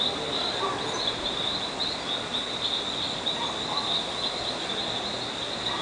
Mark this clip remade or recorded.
recorded